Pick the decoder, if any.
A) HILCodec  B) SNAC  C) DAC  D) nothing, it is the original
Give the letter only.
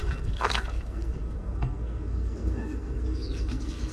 B